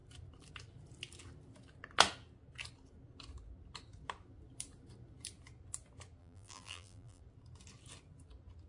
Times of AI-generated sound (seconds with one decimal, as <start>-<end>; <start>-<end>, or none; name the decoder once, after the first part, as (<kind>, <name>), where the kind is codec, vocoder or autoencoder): 6.2-7.2 (vocoder, BigVGAN v2)